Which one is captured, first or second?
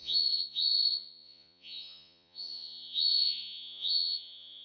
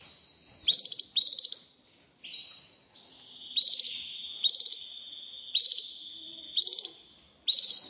second